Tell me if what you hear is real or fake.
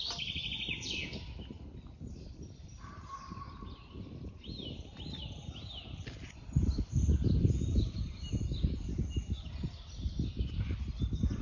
fake